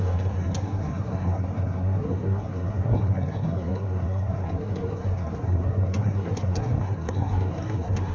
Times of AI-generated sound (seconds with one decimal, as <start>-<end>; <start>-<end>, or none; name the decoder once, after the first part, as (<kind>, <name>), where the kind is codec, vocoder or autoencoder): 0.0-8.1 (codec, SNAC)